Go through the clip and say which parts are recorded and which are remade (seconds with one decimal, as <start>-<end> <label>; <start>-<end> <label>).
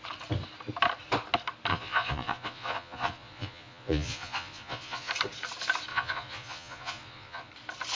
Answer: 0.0-1.7 recorded; 1.7-5.1 remade; 5.1-5.9 recorded; 5.9-7.5 remade; 7.5-7.9 recorded